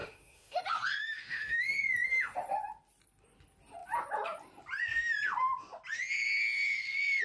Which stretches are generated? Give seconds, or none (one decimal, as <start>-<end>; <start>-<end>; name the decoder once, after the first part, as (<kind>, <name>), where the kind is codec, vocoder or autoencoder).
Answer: 0.0-0.6 (autoencoder, DAC-VAE); 1.0-1.8